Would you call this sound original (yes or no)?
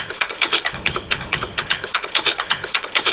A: no